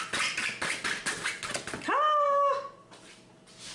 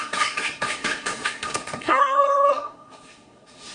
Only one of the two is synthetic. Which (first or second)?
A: second